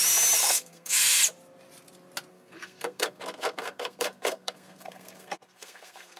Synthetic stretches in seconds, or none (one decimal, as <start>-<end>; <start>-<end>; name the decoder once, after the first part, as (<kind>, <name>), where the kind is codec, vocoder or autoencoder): 0.4-1.0 (codec, SNAC); 2.3-6.2